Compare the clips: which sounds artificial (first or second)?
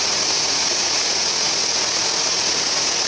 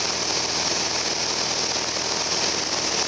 first